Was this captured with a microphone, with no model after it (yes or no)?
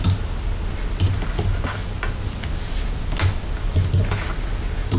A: yes